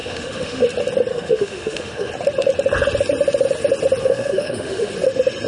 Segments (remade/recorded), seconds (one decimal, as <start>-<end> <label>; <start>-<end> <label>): 0.0-0.6 remade; 0.6-1.1 recorded; 1.1-2.1 remade; 2.1-4.0 recorded; 4.0-4.9 remade; 4.9-5.5 recorded